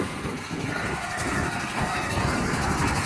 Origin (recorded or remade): remade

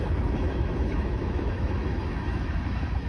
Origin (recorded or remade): remade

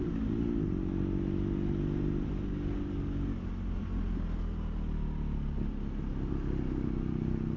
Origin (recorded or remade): recorded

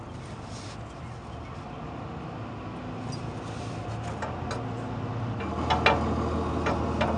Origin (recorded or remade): recorded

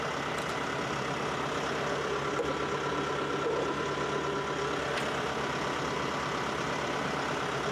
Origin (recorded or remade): recorded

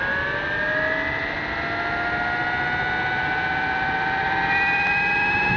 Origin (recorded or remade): recorded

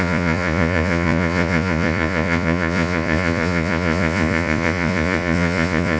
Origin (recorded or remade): remade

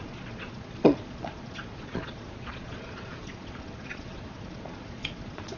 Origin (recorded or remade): remade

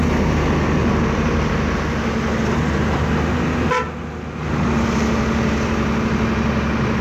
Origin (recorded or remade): recorded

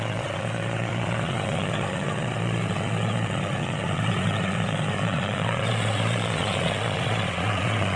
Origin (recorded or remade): remade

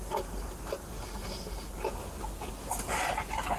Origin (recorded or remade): recorded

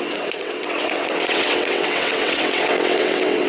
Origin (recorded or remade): remade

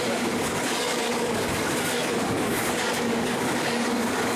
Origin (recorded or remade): remade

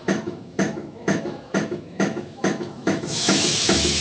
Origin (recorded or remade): remade